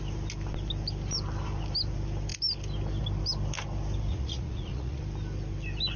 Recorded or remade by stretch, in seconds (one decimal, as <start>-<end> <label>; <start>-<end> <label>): 0.0-4.1 recorded; 4.1-5.0 remade; 5.0-6.0 recorded